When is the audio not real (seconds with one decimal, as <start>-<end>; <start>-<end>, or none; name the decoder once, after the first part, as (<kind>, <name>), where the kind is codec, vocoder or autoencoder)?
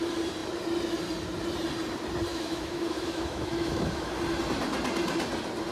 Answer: 2.3-4.2 (autoencoder, DAC-VAE)